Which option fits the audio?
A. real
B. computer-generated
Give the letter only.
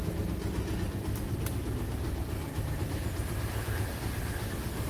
A